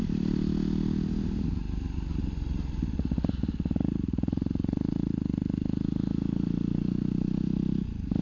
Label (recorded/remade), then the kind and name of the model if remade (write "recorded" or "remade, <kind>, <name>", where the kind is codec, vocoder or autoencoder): recorded